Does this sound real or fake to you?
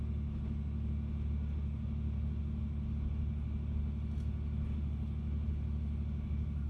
real